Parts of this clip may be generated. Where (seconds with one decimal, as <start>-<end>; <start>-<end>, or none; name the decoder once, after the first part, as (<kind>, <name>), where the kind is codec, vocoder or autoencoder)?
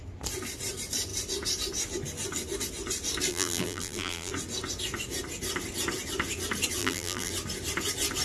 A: 3.3-4.3 (vocoder, BigVGAN v2); 6.8-7.3